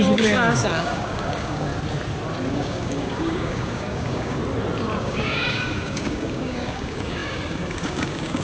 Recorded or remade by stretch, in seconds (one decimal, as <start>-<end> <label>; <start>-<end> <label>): 0.0-1.7 remade; 1.7-2.5 recorded; 2.5-4.4 remade; 4.4-5.0 recorded; 5.0-8.4 remade